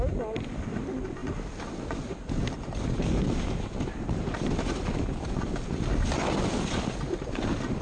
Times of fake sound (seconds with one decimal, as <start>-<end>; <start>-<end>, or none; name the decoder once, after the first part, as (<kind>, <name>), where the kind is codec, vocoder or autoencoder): none